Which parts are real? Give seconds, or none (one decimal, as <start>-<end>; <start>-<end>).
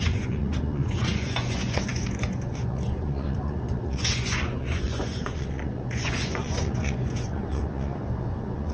none